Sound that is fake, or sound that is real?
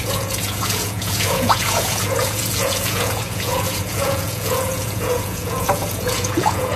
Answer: fake